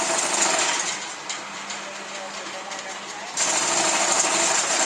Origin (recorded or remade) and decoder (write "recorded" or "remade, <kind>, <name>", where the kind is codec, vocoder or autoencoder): recorded